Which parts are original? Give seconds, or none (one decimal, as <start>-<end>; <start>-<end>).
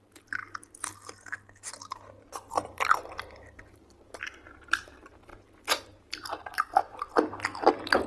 0.4-2.5; 5.3-6.0; 7.1-8.1